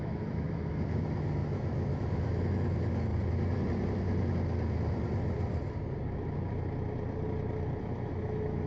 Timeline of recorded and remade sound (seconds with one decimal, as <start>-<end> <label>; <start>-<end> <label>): 0.0-3.1 remade; 3.1-7.8 recorded; 7.8-8.7 remade